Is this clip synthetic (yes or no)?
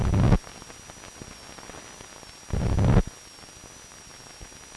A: no